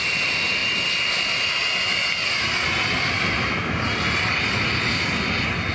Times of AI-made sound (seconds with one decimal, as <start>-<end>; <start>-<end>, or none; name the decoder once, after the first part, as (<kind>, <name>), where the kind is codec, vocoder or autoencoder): none